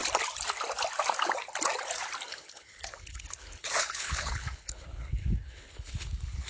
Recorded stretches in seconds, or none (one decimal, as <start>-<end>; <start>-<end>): 0.0-2.3